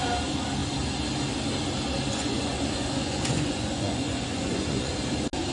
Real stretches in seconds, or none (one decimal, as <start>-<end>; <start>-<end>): 0.0-2.1; 4.9-5.5